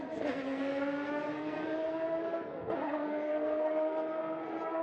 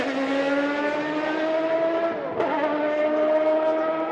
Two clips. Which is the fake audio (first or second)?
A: first